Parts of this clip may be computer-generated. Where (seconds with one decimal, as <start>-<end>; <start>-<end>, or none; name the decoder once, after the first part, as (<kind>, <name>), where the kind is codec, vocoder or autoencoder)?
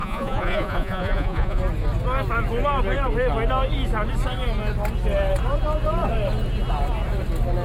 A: 0.0-1.6 (vocoder, Vocos)